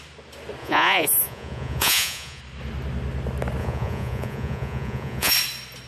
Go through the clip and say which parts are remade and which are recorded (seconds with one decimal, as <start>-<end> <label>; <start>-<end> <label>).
0.0-0.6 recorded; 0.6-2.4 remade; 2.4-3.6 recorded; 3.6-5.3 remade; 5.3-5.9 recorded